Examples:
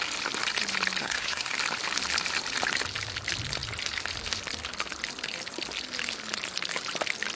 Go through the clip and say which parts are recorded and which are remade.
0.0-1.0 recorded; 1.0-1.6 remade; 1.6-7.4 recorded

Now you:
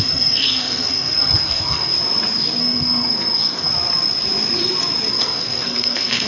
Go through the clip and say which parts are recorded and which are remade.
0.0-1.9 remade; 1.9-2.6 recorded; 2.6-3.7 remade; 3.7-5.1 recorded; 5.1-6.3 remade

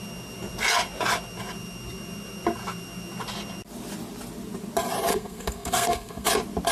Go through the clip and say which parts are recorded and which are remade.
0.0-5.1 recorded; 5.1-6.3 remade; 6.3-6.7 recorded

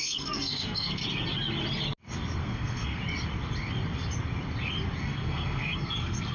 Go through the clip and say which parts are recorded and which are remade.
0.0-1.0 remade; 1.0-2.4 recorded; 2.4-3.0 remade; 3.0-5.0 recorded; 5.0-6.3 remade